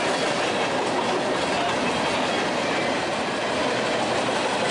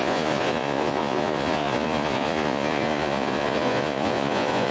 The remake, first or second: second